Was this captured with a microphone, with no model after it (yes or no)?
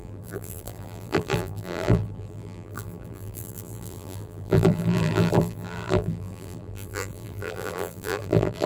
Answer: no